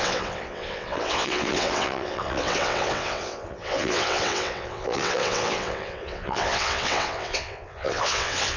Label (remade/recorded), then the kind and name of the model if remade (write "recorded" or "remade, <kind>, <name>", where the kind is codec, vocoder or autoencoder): remade, vocoder, WaveNeXt